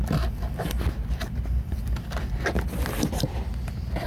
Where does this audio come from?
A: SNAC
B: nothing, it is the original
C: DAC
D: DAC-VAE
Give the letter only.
B